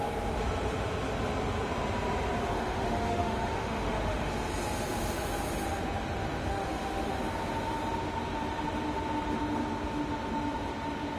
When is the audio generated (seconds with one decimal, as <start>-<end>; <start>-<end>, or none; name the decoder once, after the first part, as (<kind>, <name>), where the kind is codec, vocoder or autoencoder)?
2.4-4.3 (autoencoder, DAC-VAE); 6.5-7.1